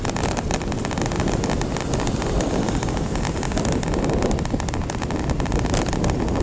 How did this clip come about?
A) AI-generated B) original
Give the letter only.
B